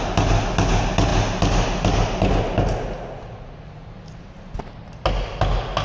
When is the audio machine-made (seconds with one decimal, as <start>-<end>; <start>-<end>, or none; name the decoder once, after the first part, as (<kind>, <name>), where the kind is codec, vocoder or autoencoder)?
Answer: none